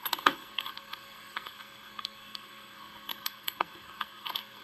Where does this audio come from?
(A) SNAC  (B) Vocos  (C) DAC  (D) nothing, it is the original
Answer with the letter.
A